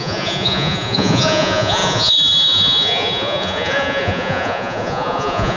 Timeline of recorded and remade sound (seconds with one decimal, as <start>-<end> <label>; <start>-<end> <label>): 0.0-5.6 remade